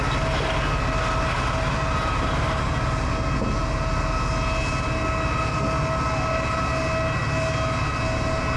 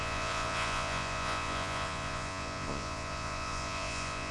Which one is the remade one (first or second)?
second